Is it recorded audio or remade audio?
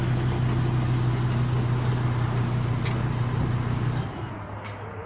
recorded